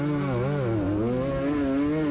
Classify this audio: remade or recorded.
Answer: recorded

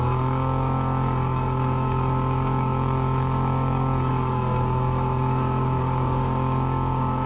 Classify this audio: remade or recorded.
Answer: remade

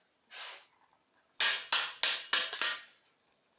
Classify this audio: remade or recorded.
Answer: recorded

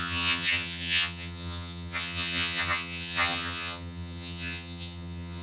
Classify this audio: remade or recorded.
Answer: remade